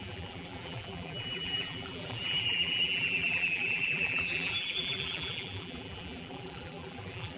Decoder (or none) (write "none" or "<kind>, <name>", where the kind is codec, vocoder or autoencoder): vocoder, BigVGAN v2